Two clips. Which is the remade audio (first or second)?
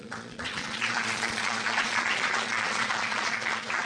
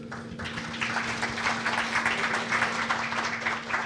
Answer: first